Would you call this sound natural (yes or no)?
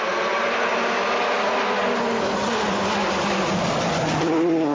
yes